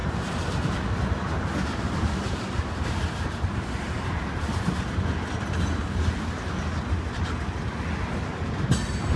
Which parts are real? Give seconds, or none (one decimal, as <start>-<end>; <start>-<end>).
0.8-9.2